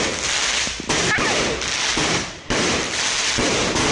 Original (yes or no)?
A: yes